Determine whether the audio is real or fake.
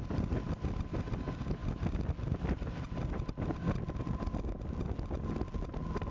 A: real